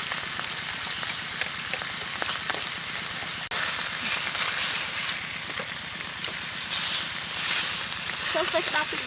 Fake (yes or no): no